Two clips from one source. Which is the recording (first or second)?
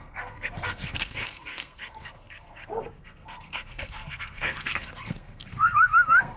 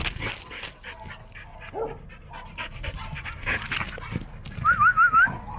second